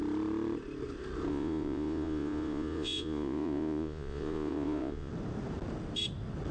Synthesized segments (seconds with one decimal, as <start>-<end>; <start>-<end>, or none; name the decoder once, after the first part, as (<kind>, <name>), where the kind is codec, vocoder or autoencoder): 1.3-5.1 (vocoder, Vocos)